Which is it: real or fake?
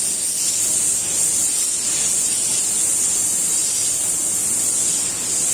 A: real